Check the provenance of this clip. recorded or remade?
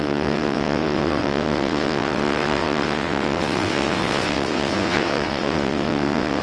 remade